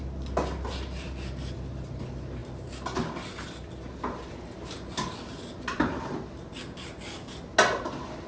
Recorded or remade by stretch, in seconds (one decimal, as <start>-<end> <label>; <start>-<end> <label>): 0.0-8.3 recorded